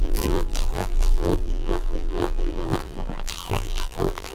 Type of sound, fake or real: fake